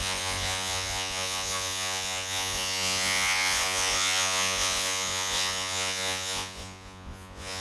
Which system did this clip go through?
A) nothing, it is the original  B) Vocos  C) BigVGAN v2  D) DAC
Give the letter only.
B